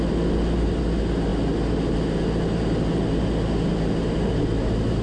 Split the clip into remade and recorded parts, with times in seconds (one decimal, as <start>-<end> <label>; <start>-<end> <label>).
0.0-5.0 recorded